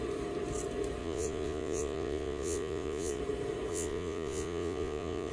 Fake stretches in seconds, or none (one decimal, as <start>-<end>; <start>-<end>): 1.0-3.2; 3.7-5.3